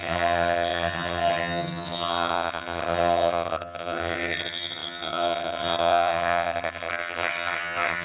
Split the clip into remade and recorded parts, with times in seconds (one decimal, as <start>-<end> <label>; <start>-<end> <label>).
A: 0.0-8.0 remade